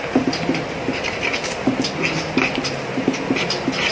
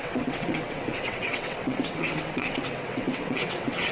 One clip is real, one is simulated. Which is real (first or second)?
first